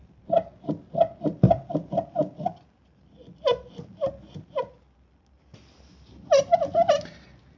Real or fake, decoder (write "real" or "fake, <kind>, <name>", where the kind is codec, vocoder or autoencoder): real